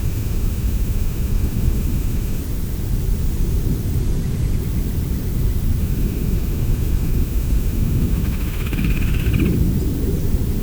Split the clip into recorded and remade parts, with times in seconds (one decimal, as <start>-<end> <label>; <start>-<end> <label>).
0.0-2.4 remade; 2.4-5.8 recorded; 5.8-9.3 remade; 9.3-10.6 recorded